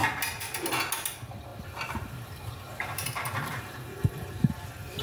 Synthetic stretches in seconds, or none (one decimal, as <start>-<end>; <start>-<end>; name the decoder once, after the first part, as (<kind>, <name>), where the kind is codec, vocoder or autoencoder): 1.5-4.5 (vocoder, BigVGAN v2)

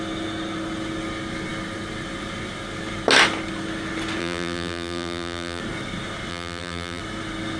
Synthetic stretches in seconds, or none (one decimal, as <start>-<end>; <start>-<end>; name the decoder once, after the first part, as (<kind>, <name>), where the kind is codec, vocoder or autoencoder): 4.2-5.6 (vocoder, BigVGAN v2); 6.3-7.0

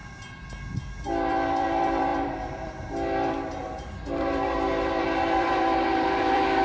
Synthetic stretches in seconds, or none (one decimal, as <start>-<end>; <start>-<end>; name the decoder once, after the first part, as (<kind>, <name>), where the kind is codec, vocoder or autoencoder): 1.3-6.6 (vocoder, BigVGAN v2)

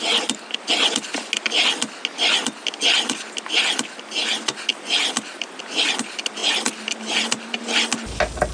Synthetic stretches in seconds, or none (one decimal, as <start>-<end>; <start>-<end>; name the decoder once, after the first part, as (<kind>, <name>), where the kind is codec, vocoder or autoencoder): 4.7-5.6 (vocoder, BigVGAN v2); 6.4-7.6

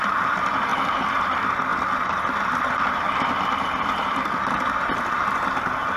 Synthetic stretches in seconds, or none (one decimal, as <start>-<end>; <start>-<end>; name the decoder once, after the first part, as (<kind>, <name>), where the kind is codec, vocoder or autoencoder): 0.7-1.2 (vocoder, BigVGAN v2)

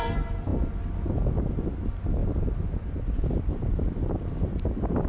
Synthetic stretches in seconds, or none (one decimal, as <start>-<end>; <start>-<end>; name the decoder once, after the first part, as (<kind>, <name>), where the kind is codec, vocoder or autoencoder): 0.0-0.5 (vocoder, BigVGAN v2); 1.5-5.1

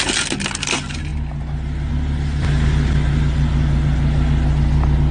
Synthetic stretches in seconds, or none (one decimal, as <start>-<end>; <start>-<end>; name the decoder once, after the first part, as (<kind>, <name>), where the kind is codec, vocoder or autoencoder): none

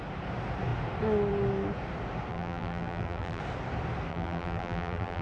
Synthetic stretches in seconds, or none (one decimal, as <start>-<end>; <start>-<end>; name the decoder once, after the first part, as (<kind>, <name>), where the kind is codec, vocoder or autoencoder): 2.3-3.4 (vocoder, BigVGAN v2); 4.1-5.2